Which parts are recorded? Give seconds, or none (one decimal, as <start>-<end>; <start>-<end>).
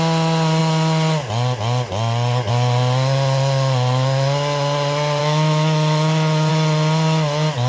0.0-5.2; 6.5-7.7